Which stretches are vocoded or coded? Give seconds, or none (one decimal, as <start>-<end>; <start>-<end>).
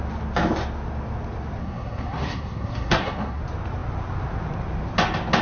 1.6-3.4